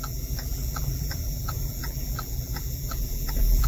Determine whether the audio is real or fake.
fake